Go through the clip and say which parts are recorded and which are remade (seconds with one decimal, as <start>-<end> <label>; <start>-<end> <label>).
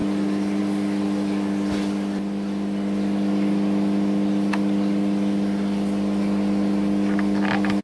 0.0-7.8 recorded